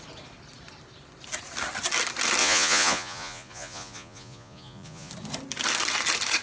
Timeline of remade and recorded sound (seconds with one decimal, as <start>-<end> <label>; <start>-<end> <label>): 0.0-2.4 recorded; 2.4-5.1 remade; 5.1-6.4 recorded